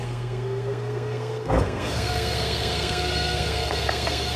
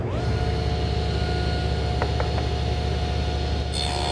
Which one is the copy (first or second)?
first